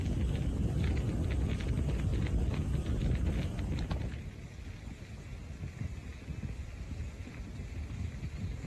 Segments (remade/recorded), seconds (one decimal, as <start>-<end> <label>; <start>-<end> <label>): 0.0-8.7 recorded